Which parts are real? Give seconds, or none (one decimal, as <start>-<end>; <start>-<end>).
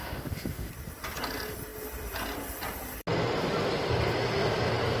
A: 0.7-5.0